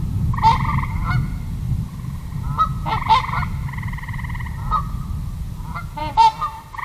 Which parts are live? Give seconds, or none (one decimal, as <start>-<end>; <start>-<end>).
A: 0.0-6.0